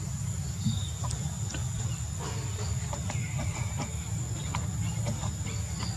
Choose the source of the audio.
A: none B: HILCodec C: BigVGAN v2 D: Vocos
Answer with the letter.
A